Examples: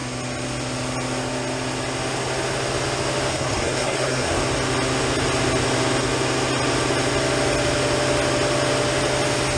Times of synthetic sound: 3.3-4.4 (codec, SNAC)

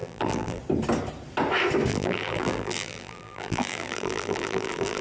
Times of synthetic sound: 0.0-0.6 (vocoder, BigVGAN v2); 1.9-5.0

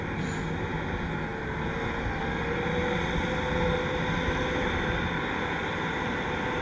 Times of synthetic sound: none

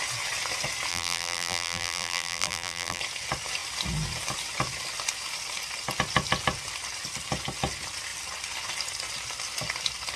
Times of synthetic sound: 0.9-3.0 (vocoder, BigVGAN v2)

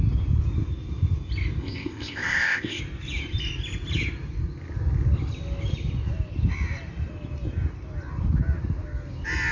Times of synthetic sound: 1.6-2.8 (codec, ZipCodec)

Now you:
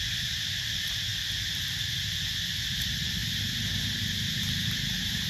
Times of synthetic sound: 0.0-1.1 (vocoder, BigVGAN v2); 2.2-3.2; 4.4-5.3